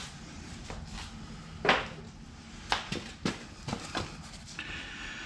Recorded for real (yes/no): yes